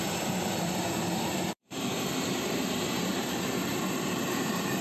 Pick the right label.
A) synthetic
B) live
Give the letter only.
A